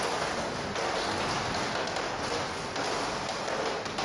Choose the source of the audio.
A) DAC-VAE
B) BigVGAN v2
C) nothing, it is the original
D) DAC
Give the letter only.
C